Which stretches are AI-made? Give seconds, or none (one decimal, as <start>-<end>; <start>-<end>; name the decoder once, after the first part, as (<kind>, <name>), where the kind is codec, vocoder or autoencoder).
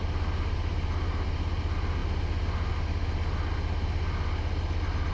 none